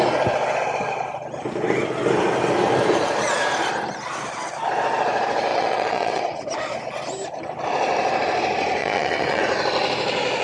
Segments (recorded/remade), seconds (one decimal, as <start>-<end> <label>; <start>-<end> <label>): 0.0-5.5 recorded; 5.5-6.2 remade; 6.2-8.8 recorded; 8.8-9.4 remade; 9.4-10.4 recorded